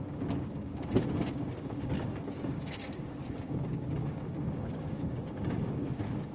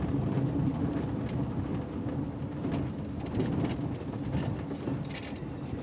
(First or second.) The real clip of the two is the second